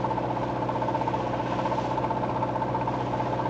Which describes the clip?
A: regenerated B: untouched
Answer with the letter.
B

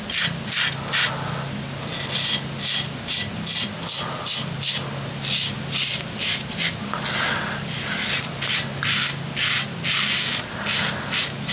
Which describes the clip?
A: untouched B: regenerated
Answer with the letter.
A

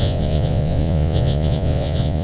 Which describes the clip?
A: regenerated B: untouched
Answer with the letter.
A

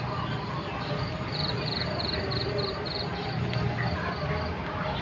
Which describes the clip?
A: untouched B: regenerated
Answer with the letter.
A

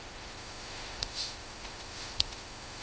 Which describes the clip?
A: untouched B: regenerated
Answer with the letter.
B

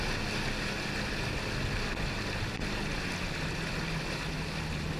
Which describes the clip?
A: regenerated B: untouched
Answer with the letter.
B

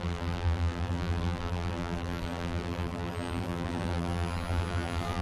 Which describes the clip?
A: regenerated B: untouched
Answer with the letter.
A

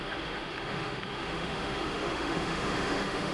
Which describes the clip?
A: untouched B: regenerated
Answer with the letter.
B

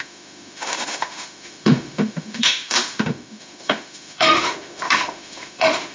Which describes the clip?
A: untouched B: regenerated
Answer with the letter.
B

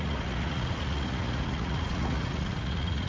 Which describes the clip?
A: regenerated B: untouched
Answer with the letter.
A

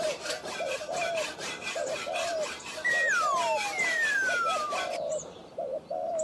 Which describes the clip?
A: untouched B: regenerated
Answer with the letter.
B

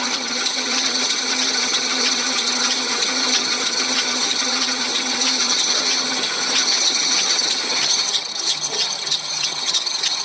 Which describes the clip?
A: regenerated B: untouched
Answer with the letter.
A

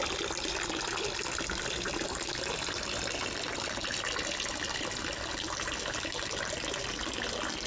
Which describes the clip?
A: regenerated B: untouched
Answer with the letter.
B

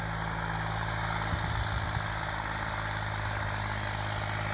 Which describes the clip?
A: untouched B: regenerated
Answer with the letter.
A